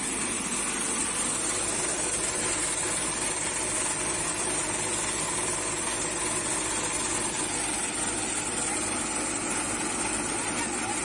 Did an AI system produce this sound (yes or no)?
no